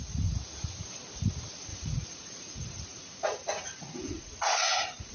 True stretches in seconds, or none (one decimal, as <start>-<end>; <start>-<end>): 0.0-1.7